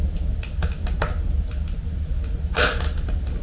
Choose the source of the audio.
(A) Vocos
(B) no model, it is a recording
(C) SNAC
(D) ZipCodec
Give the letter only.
B